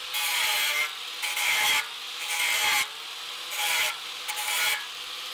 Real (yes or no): yes